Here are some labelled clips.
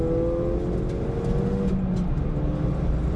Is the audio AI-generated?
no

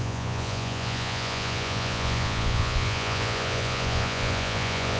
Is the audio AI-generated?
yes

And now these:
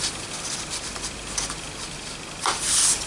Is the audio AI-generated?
no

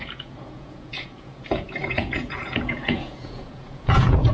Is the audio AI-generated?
yes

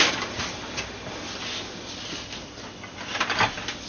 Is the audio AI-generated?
no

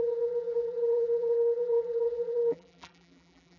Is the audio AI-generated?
yes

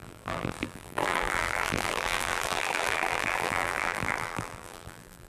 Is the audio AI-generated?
yes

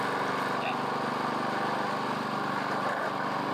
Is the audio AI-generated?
no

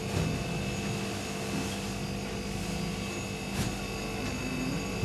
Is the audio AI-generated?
no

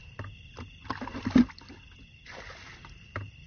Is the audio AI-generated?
no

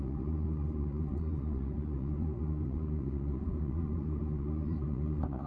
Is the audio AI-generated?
yes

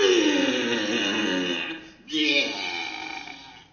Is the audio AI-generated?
no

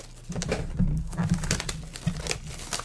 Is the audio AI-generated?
no